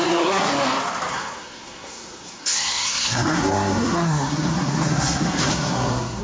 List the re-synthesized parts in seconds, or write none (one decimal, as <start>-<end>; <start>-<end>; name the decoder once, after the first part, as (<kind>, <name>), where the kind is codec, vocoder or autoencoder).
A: 0.0-0.5 (codec, SNAC); 1.1-6.2